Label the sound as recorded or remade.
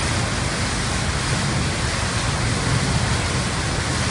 recorded